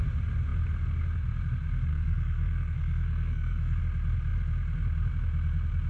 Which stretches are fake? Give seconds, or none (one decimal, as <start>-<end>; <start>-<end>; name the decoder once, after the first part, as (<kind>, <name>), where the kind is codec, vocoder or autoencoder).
1.9-3.8 (codec, SNAC)